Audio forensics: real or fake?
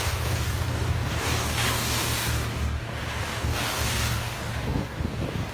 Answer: fake